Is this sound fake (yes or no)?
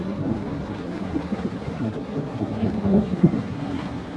yes